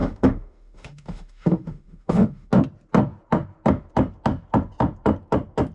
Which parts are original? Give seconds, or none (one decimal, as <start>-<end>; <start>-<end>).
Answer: 2.5-5.7